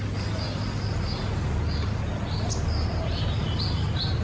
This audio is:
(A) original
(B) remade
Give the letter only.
A